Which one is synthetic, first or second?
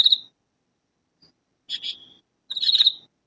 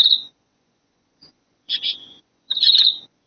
second